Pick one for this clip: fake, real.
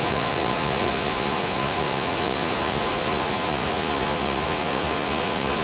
fake